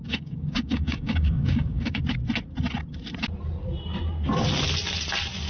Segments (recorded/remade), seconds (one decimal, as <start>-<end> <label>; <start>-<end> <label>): 0.0-2.0 remade; 2.0-5.5 recorded